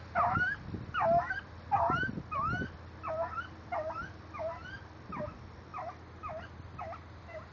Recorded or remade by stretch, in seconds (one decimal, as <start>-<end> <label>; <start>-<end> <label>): 0.0-7.5 recorded